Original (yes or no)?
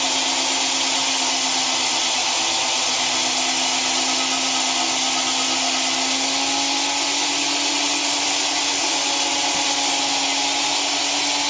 yes